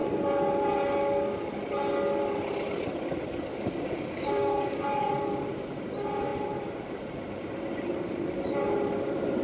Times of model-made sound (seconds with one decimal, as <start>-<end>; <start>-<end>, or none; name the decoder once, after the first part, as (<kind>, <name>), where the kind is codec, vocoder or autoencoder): 3.5-4.8 (codec, DAC)